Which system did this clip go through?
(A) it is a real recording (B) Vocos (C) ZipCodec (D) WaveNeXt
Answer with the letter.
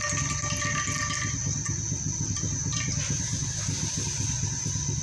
A